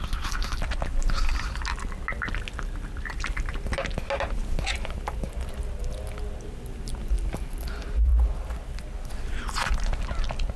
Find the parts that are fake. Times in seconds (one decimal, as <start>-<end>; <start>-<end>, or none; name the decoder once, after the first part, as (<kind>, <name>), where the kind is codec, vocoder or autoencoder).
none